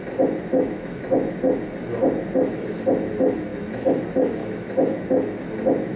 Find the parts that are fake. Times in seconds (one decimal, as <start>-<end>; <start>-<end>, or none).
0.5-1.3; 3.5-4.0; 4.4-5.4